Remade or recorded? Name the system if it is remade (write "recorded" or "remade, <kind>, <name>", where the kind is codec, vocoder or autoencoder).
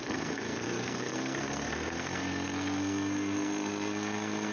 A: remade, codec, SNAC